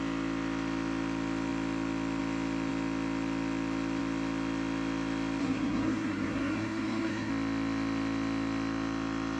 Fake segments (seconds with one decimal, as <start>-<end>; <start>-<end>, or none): 5.4-7.3